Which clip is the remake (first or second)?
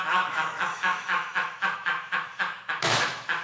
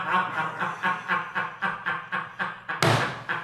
first